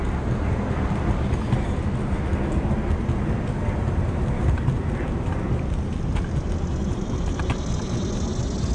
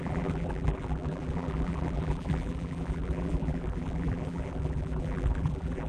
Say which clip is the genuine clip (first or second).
first